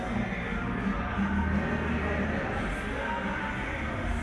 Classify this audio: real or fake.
real